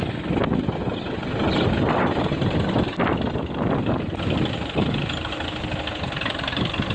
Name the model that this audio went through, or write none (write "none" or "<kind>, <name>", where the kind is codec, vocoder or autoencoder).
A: none